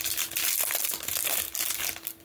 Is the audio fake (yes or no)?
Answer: no